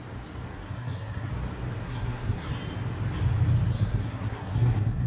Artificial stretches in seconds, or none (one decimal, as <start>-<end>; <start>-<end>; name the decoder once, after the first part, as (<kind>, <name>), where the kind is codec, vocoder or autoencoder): 0.5-1.3 (codec, SNAC); 1.8-2.5; 3.7-5.1